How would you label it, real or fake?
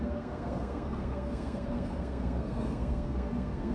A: fake